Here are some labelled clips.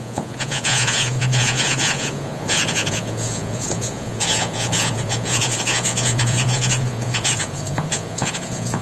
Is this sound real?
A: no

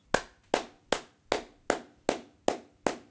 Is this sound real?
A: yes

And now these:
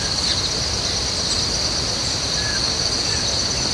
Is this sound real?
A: yes